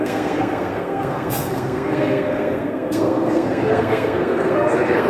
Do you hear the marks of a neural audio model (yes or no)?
yes